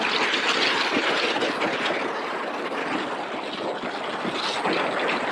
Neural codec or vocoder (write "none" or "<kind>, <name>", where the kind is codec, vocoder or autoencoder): none